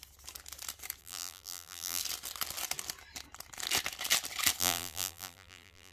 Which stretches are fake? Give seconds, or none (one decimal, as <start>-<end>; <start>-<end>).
1.0-2.0; 4.6-5.9